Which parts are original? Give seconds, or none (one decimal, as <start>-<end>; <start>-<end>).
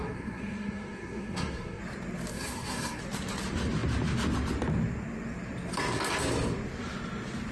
1.8-2.3; 3.0-7.5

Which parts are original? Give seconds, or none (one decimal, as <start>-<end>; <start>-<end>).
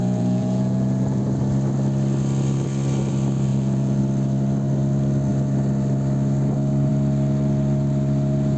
1.2-3.5; 4.0-8.6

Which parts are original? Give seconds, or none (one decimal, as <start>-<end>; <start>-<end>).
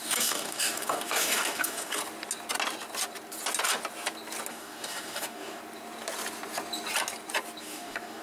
2.0-4.5; 5.6-7.6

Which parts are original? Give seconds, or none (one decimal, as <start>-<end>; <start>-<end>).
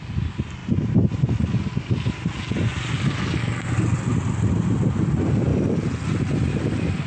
0.0-5.5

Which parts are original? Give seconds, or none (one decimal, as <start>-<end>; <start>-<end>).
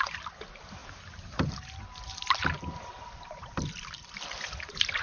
0.0-5.0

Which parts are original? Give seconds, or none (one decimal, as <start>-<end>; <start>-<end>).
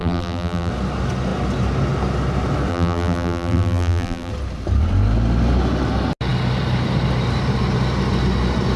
0.7-2.7; 4.3-8.8